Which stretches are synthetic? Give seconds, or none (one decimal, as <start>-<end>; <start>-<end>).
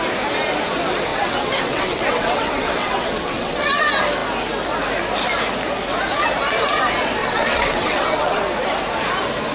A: 1.1-3.8; 7.2-8.4